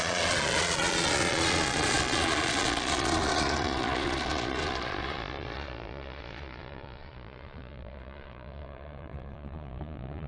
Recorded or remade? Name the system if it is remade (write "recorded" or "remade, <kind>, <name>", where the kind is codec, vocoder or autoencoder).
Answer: remade, vocoder, Vocos